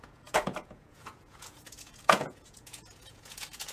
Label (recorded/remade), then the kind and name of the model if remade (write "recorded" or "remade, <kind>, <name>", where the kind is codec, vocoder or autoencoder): remade, vocoder, Vocos